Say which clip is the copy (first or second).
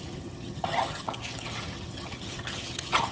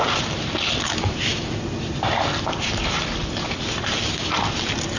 first